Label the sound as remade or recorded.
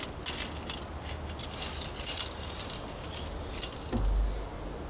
recorded